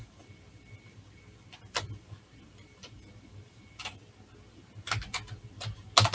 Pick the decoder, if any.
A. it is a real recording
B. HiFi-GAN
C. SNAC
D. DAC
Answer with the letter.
A